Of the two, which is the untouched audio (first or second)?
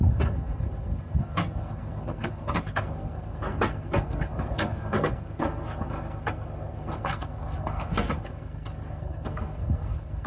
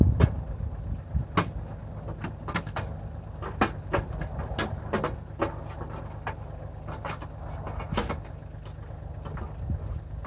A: second